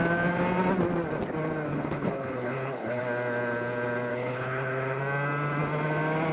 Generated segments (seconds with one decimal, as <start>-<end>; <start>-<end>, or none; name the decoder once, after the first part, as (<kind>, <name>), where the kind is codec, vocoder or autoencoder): 1.7-3.0 (codec, HILCodec); 4.1-5.0